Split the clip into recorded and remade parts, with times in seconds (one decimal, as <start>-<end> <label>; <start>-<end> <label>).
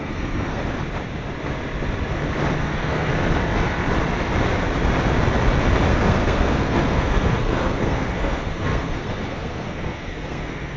0.0-0.6 remade; 0.6-2.6 recorded; 2.6-3.1 remade; 3.1-5.9 recorded; 5.9-10.8 remade